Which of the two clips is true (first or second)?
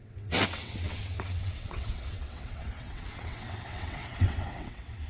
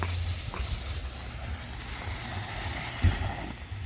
second